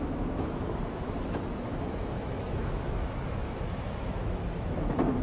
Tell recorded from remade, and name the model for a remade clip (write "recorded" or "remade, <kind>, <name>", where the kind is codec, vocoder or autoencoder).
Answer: remade, autoencoder, DAC-VAE